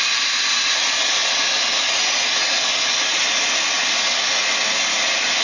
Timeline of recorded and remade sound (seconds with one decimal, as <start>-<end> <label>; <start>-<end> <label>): 0.0-5.4 recorded